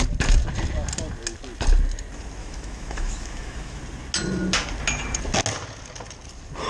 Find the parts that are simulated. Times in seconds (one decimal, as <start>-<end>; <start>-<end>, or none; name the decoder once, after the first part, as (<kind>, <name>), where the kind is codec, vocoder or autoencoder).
2.4-3.8 (autoencoder, DAC-VAE)